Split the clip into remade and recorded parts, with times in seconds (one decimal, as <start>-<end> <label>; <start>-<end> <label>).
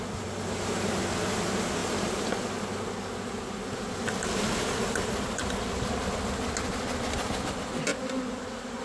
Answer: 0.0-8.8 recorded